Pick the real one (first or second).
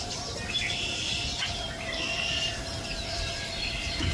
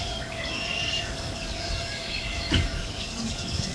first